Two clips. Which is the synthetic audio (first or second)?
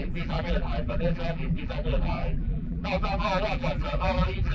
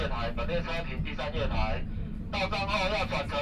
first